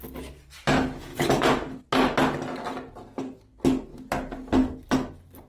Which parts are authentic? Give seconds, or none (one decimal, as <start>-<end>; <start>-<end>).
0.0-1.1; 1.8-5.5